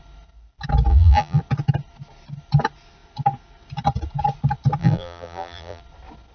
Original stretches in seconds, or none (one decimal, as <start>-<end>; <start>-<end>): 0.0-0.9; 1.4-4.8; 5.8-6.3